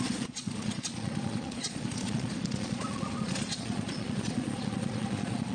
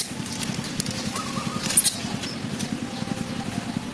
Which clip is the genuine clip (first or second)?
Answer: second